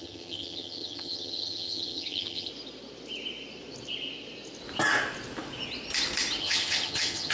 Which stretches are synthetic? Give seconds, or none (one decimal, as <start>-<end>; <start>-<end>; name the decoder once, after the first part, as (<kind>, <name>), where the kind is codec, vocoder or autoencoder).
0.0-2.5 (vocoder, HiFi-GAN); 6.4-7.3